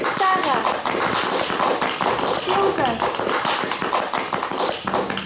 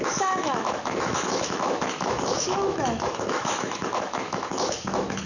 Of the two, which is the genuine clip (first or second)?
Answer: first